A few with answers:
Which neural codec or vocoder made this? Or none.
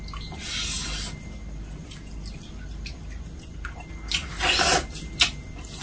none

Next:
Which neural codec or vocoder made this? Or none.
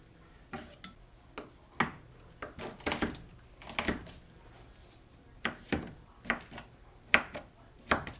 none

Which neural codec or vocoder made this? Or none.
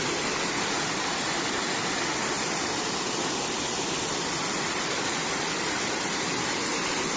none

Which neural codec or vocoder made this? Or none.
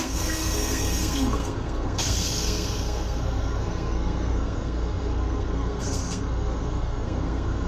codec, SNAC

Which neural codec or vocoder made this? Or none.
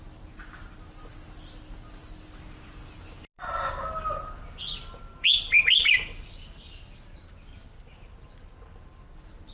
none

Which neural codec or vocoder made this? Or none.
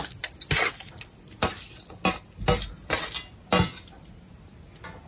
none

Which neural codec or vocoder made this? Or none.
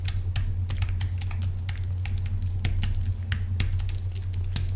none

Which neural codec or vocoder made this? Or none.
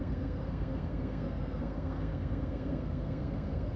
codec, SNAC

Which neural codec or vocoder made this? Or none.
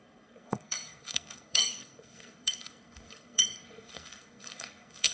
codec, SNAC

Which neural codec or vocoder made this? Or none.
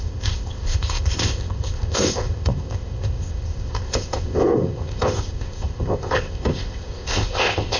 codec, ZipCodec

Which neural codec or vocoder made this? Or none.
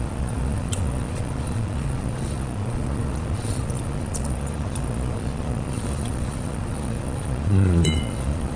vocoder, Vocos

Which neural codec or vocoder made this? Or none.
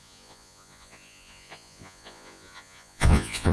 vocoder, Vocos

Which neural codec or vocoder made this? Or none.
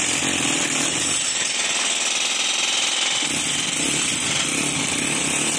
none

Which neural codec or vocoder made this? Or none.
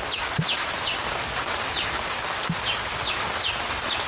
none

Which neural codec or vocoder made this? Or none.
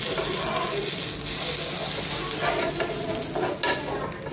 none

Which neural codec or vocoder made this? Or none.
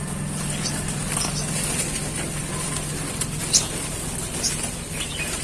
none